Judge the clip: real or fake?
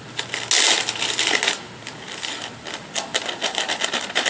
real